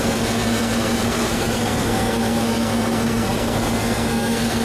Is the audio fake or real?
fake